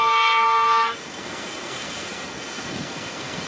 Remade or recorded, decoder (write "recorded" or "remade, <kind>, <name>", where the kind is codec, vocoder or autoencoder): remade, codec, SNAC